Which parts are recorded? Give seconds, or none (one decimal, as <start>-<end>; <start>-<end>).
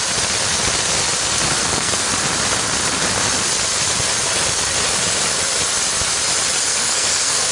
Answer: 0.0-1.6; 2.1-6.7